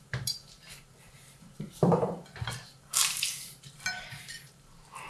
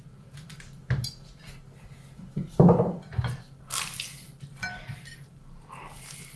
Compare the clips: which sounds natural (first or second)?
second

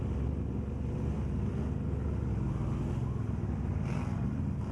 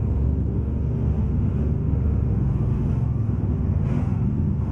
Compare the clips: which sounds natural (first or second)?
first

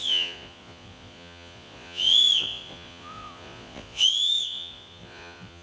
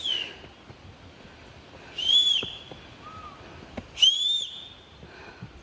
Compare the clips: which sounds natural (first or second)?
second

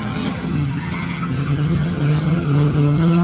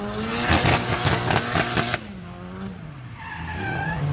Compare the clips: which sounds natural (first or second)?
second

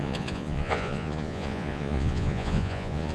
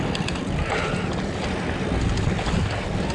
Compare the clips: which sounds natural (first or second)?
second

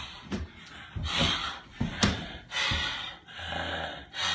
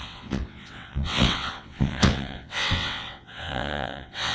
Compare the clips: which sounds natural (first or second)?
first